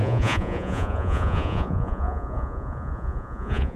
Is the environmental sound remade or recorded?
remade